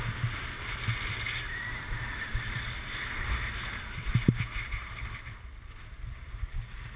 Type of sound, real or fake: real